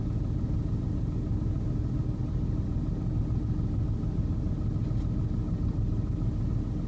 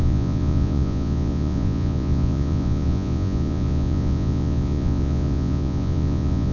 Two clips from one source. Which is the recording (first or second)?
first